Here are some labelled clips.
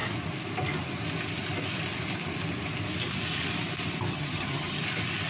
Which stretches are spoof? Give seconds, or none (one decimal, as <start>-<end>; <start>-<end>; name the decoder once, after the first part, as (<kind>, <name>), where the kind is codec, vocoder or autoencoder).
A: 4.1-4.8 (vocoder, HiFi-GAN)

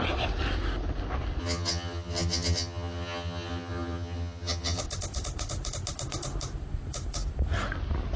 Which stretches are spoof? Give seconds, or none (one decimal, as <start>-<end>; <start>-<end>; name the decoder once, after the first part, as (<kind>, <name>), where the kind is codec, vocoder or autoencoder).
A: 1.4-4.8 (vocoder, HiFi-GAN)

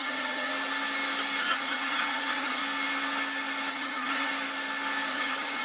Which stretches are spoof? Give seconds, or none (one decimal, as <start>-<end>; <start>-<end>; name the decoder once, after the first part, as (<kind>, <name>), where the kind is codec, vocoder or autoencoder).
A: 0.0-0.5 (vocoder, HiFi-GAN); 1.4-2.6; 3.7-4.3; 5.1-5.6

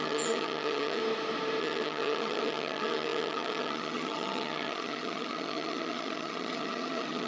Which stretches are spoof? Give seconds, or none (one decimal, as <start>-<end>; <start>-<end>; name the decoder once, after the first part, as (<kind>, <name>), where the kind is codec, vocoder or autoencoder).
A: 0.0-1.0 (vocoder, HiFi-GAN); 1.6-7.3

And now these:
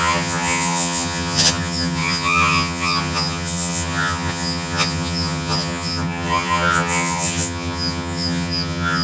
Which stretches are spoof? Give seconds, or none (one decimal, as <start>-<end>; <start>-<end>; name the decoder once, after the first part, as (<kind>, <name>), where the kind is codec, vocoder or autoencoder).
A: 0.0-9.0 (vocoder, HiFi-GAN)

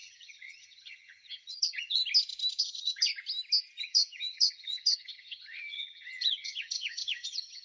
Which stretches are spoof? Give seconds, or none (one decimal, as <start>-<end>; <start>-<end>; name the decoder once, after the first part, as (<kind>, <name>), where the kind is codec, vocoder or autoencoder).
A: 0.0-2.0 (vocoder, HiFi-GAN); 2.6-3.1; 3.8-7.6

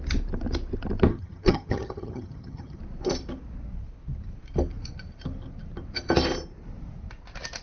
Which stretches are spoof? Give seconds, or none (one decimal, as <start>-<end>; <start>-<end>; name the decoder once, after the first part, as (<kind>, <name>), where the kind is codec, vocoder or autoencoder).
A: 1.1-2.8 (vocoder, HiFi-GAN)